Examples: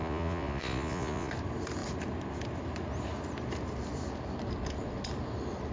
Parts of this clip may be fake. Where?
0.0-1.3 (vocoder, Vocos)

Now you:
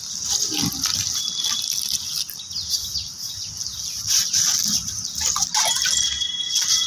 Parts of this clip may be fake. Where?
none

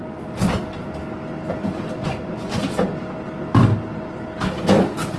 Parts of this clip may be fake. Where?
2.0-2.6 (vocoder, Vocos)

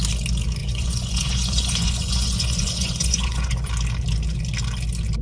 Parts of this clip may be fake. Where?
0.6-3.7 (vocoder, Vocos)

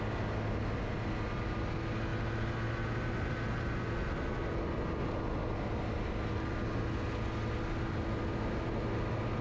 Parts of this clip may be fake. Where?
none

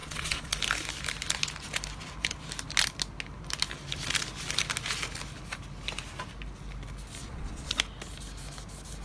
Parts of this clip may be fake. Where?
0.0-0.5 (vocoder, Vocos); 7.2-7.7

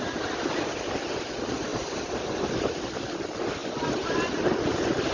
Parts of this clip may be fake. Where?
none